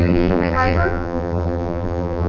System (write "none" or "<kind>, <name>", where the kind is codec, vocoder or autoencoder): vocoder, BigVGAN v2